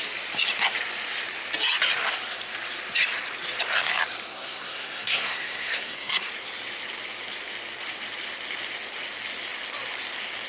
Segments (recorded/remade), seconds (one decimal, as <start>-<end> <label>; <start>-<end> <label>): 0.0-4.3 recorded; 4.3-6.3 remade; 6.3-10.5 recorded